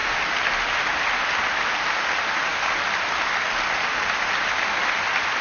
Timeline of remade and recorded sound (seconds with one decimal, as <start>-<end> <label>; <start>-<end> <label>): 0.0-5.4 recorded